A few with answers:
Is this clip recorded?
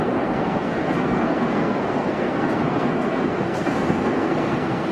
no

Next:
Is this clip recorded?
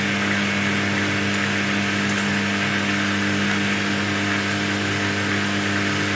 yes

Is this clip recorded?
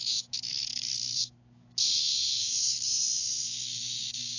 no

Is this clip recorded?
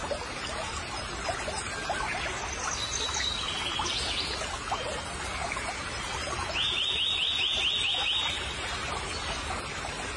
yes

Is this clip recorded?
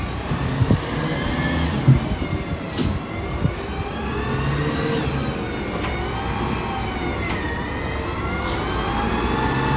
yes